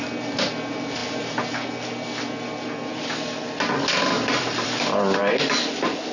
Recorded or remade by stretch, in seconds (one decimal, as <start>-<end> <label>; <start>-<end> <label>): 0.0-3.9 recorded; 3.9-5.2 remade; 5.2-6.1 recorded